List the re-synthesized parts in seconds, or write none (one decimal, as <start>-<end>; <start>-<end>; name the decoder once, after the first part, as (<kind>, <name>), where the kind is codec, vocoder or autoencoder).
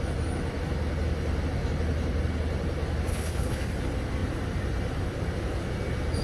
3.1-3.7 (codec, HILCodec)